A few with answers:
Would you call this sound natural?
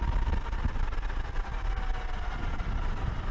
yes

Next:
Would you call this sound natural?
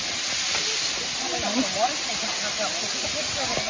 yes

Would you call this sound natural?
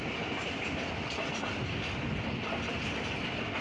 yes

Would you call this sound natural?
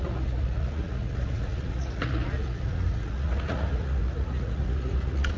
no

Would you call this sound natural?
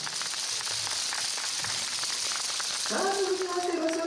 yes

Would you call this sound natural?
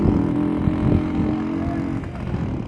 yes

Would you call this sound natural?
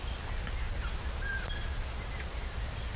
yes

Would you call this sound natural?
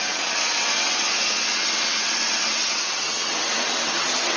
no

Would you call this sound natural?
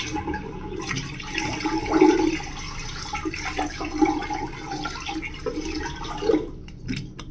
yes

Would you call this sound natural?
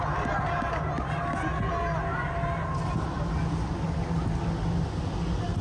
yes